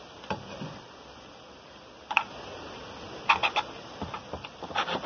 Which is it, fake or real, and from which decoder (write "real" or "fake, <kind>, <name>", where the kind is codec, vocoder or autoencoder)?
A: real